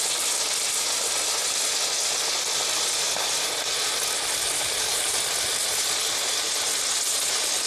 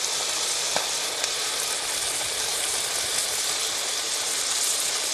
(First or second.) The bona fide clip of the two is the first